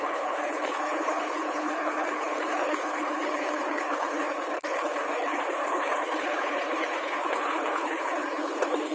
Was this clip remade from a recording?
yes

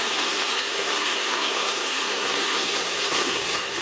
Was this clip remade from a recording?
yes